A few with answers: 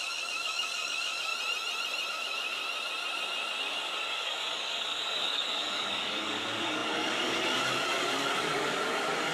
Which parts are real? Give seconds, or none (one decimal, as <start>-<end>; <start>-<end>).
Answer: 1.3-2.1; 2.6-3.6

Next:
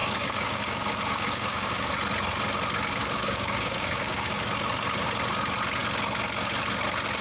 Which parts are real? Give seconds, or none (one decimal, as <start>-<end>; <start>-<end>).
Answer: 1.9-3.0; 4.5-7.2

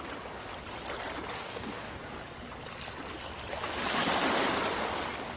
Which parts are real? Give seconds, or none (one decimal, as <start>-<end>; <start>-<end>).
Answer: 0.0-1.3; 2.0-5.4

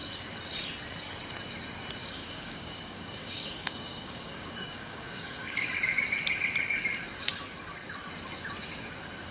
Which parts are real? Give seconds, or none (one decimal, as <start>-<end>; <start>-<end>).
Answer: 0.0-2.0; 5.7-9.3